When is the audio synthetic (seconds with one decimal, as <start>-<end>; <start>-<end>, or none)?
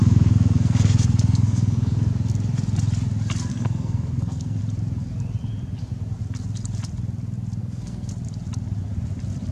0.0-2.1; 3.5-4.6; 7.6-8.1